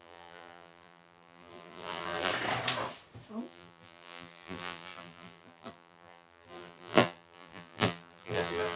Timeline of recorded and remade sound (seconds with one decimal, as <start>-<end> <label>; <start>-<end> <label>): 0.0-2.3 remade; 2.3-3.4 recorded; 3.4-8.8 remade